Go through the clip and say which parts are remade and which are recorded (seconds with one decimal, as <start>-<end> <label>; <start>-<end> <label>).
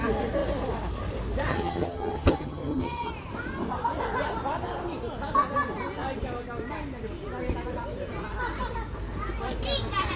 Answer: 0.0-1.5 recorded; 1.5-3.1 remade; 3.1-10.2 recorded